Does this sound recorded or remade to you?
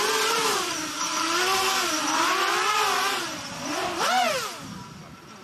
recorded